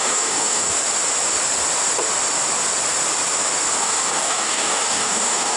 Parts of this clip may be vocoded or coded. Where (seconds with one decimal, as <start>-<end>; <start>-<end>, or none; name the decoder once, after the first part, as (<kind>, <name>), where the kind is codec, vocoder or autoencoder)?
0.0-0.7 (codec, DAC); 3.8-5.6